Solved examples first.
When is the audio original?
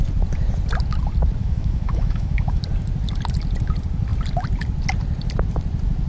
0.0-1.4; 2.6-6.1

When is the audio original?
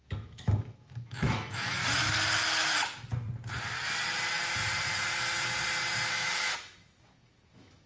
1.8-6.1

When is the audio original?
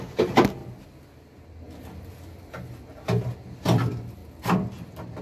0.0-5.2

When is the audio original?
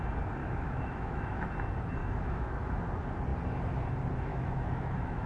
0.0-0.4; 1.5-2.0; 2.8-4.3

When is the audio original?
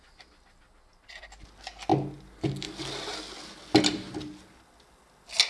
0.0-5.5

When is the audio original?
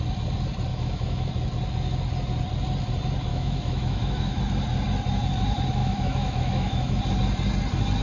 0.0-0.7; 1.3-3.3; 4.4-5.8; 7.0-8.0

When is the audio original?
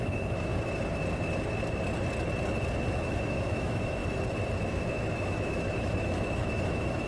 0.5-2.8; 4.0-4.6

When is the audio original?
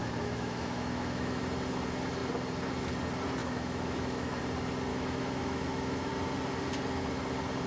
1.4-3.4; 4.4-4.9; 6.1-7.7